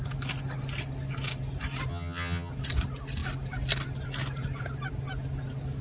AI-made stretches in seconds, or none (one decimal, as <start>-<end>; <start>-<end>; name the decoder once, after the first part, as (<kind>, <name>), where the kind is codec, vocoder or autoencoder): 1.9-2.5 (vocoder, HiFi-GAN)